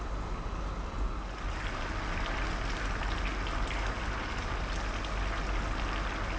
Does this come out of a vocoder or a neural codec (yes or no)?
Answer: no